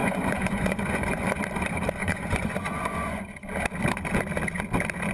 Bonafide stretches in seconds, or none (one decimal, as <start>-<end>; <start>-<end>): 1.4-2.0; 3.2-5.1